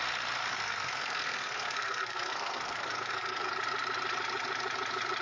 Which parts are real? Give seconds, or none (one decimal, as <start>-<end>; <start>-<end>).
0.0-0.4; 3.5-5.2

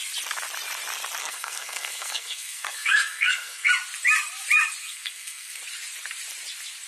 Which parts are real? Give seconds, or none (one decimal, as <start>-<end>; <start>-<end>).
0.0-1.2; 3.7-4.8; 5.6-6.9

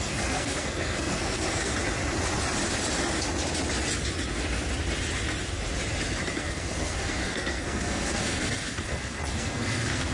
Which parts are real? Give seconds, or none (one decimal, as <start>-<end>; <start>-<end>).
1.7-6.3

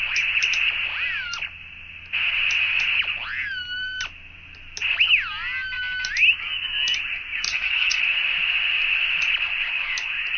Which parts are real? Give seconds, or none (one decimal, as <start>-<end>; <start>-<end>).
0.0-7.5; 8.0-10.4

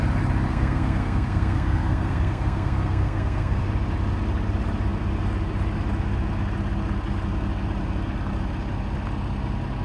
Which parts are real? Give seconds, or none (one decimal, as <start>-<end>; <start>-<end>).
0.0-0.5; 3.6-9.8

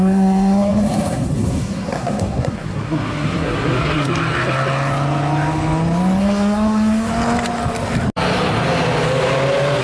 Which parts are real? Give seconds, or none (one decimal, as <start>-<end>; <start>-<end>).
4.1-6.2; 7.1-9.8

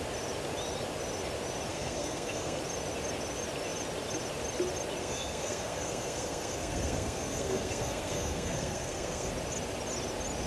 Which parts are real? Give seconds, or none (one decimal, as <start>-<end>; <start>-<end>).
0.0-1.7; 2.6-5.0; 9.3-10.5